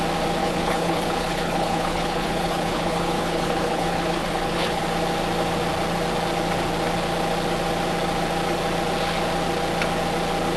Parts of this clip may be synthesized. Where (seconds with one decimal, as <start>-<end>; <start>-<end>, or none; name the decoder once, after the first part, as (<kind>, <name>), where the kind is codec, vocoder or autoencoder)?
0.4-4.8 (codec, HILCodec)